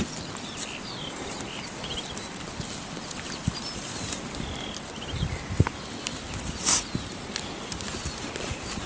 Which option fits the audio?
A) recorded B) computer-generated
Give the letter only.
A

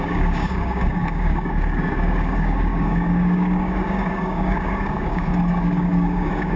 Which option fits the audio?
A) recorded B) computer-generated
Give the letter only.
B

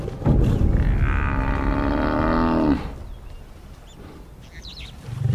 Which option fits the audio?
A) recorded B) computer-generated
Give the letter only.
A